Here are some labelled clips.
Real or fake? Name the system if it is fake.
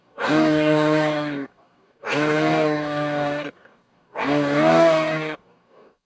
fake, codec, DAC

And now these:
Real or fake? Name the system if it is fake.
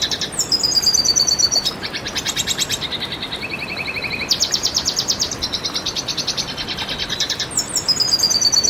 fake, vocoder, BigVGAN v2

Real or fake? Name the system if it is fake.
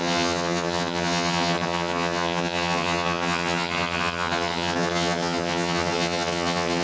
fake, vocoder, HiFi-GAN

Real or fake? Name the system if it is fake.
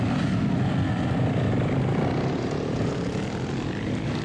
real